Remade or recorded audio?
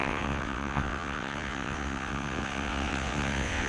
remade